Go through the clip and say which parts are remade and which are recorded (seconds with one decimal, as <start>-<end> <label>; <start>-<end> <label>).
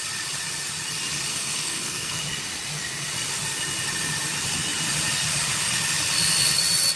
0.0-1.3 recorded; 1.3-2.2 remade; 2.2-7.0 recorded